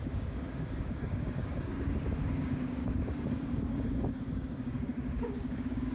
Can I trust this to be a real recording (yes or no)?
no